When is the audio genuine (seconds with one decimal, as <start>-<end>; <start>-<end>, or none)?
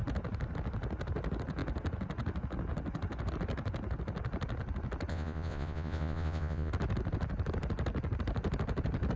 0.0-5.1; 6.7-9.2